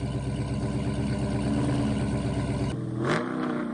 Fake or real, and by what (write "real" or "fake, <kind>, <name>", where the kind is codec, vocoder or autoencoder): real